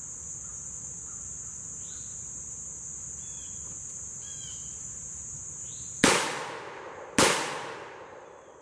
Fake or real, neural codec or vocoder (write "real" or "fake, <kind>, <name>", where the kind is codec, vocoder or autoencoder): real